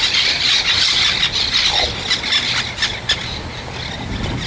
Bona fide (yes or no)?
yes